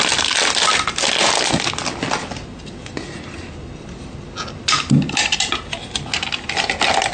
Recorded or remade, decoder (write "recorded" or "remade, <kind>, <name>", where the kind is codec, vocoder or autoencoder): recorded